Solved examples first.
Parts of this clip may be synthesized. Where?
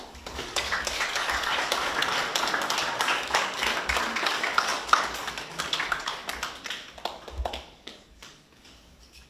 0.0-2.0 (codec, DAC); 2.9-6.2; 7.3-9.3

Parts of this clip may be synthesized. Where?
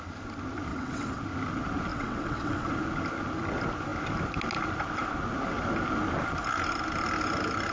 0.7-1.2 (vocoder, WaveNeXt); 1.9-2.7